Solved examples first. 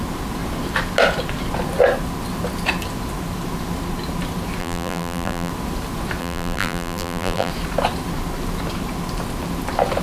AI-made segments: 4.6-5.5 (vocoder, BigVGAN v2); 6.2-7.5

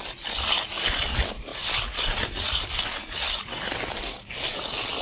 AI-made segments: none